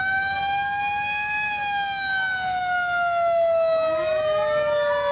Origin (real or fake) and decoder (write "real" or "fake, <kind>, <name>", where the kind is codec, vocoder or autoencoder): real